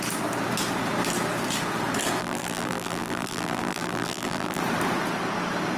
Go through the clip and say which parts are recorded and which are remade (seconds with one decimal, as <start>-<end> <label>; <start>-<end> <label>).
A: 0.0-2.2 recorded; 2.2-4.6 remade; 4.6-5.8 recorded